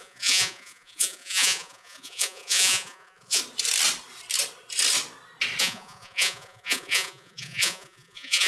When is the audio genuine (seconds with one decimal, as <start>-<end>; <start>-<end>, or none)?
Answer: 3.4-5.6